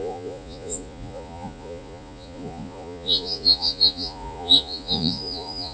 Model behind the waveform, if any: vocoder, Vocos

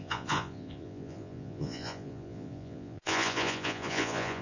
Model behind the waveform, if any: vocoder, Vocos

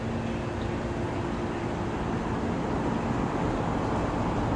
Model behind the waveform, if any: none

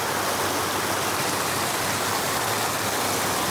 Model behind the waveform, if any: none